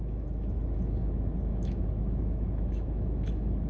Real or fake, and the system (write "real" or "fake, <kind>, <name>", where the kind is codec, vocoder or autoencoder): fake, autoencoder, DAC-VAE